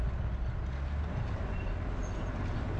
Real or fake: real